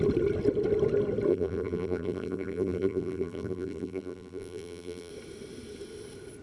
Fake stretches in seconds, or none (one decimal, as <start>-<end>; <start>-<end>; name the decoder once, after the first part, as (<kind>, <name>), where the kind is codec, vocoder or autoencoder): 1.3-5.1 (vocoder, BigVGAN v2)